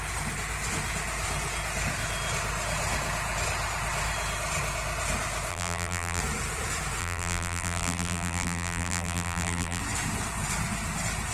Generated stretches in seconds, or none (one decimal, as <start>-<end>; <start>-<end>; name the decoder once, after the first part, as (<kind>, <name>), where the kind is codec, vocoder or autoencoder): 5.5-6.2 (vocoder, BigVGAN v2); 7.0-9.8